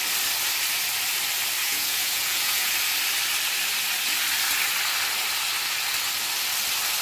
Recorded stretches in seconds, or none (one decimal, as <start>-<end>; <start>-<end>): 0.0-1.6; 2.7-7.0